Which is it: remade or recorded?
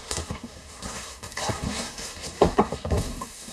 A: remade